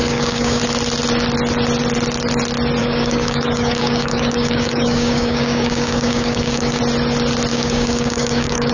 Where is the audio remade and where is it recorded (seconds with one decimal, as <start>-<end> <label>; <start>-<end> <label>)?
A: 0.0-0.6 remade; 0.6-2.8 recorded; 2.8-6.8 remade; 6.8-7.5 recorded; 7.5-8.7 remade